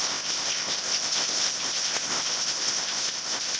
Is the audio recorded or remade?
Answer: remade